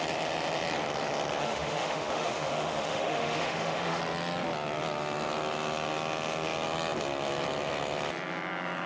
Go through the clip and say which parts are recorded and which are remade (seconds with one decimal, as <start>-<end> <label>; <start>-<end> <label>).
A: 0.0-1.4 recorded; 1.4-4.0 remade; 4.0-8.9 recorded